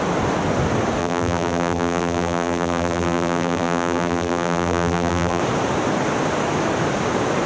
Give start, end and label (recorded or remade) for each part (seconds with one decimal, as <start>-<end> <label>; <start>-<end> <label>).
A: 0.0-1.0 recorded; 1.0-5.4 remade; 5.4-7.5 recorded